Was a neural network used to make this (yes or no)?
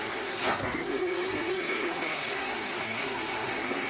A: yes